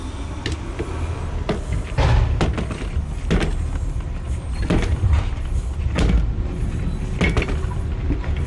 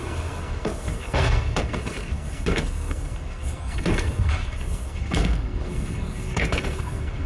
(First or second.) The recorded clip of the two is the first